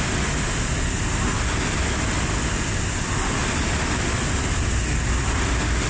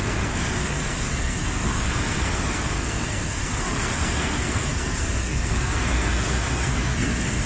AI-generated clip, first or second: second